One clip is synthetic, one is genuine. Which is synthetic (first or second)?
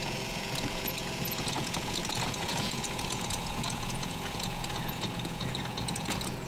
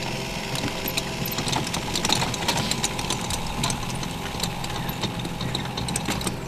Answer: first